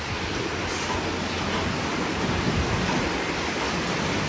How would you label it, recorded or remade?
recorded